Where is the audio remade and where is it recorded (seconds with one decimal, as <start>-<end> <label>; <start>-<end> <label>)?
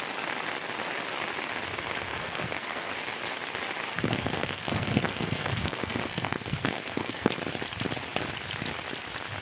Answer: 0.0-2.1 recorded; 2.1-2.9 remade; 2.9-3.9 recorded; 3.9-7.4 remade; 7.4-9.4 recorded